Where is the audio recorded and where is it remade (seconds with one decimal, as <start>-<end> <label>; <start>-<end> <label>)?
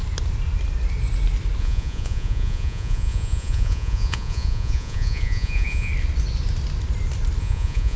0.0-1.6 recorded; 1.6-5.9 remade; 5.9-7.4 recorded; 7.4-8.0 remade